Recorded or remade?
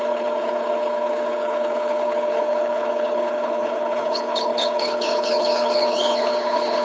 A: remade